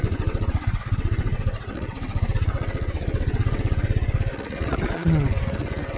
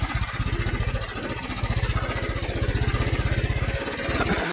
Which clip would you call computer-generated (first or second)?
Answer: first